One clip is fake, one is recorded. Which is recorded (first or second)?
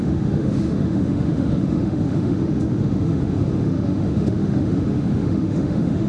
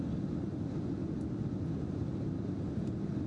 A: second